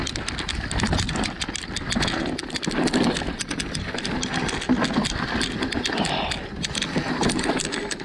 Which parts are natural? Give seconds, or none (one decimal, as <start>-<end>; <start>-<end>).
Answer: 0.0-8.0